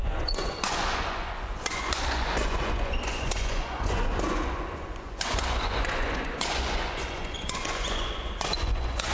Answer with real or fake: fake